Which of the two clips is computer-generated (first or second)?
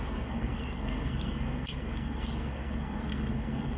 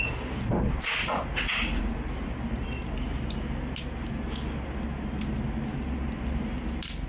first